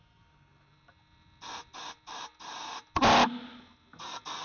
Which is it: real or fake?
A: real